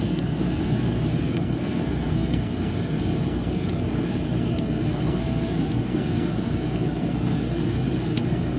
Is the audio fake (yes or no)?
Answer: yes